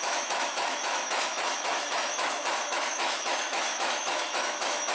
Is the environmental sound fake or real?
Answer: fake